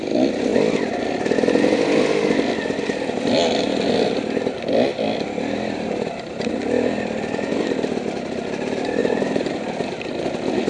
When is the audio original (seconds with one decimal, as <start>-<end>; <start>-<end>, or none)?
0.0-9.0; 9.6-10.7